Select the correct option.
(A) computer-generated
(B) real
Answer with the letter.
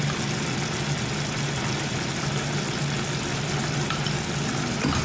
B